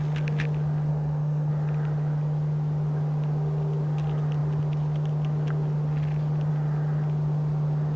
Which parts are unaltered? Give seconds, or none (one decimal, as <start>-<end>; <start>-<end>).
0.0-0.9; 1.5-8.0